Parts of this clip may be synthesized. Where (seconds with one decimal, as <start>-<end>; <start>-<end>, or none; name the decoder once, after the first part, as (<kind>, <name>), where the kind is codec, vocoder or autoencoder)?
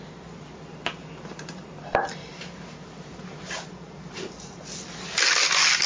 2.3-4.7 (vocoder, BigVGAN v2)